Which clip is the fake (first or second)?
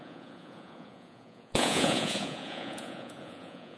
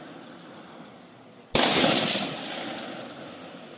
first